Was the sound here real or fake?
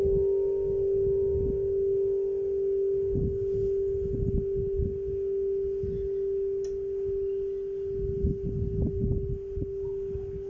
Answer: real